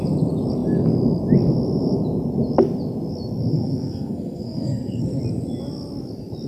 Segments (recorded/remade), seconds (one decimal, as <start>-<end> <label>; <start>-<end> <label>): 0.0-3.5 recorded; 3.5-5.2 remade; 5.2-6.5 recorded